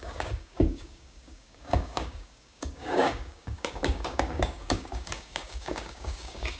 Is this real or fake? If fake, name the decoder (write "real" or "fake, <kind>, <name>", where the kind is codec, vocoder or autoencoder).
fake, codec, DAC